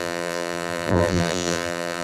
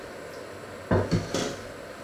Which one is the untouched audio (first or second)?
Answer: second